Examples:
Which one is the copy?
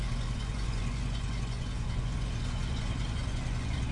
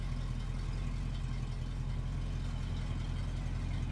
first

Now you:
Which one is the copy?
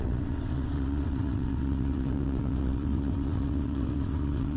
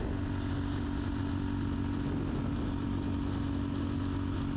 first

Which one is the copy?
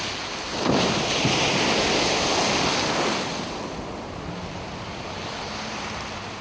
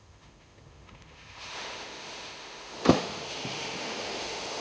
second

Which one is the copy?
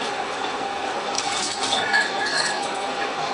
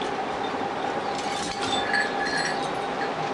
first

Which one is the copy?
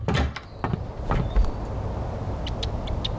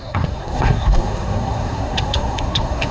second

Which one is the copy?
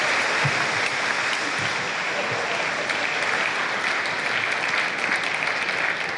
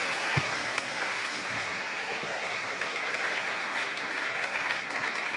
second